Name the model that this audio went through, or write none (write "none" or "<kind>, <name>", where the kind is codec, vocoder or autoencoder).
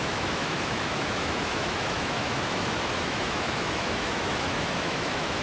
autoencoder, DAC-VAE